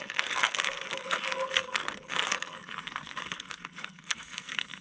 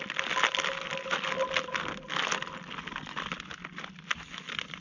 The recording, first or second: second